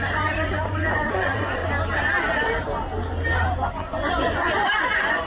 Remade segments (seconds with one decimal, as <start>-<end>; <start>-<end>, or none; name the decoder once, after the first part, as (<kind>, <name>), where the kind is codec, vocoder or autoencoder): 0.0-1.6 (vocoder, Vocos); 3.7-5.3

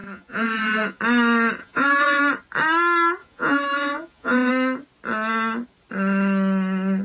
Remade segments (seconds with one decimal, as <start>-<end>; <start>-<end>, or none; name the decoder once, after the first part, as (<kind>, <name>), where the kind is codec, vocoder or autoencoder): 0.0-1.0 (vocoder, Vocos); 1.6-2.2; 3.2-4.5